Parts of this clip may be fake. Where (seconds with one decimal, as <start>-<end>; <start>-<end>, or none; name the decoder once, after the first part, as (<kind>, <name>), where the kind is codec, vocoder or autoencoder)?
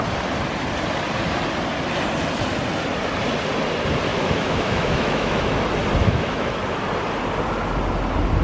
4.1-5.6 (autoencoder, DAC-VAE); 6.0-6.6